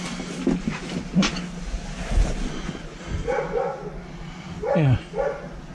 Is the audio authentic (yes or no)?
yes